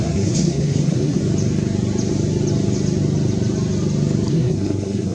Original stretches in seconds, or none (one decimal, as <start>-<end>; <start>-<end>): 1.2-4.3